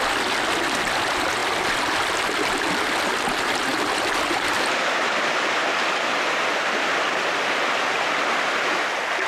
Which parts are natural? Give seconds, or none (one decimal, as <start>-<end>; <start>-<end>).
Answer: 0.0-9.3